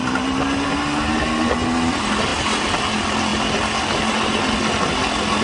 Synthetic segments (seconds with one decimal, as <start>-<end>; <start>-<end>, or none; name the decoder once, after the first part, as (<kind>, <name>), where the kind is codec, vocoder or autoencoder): none